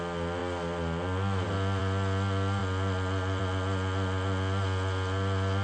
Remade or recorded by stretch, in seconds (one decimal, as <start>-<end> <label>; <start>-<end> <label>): 0.0-5.6 recorded